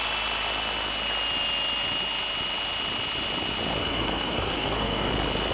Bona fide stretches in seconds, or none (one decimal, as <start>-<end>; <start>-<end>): 0.0-3.8; 5.1-5.5